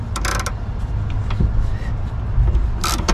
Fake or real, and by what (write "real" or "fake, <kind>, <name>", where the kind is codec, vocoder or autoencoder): real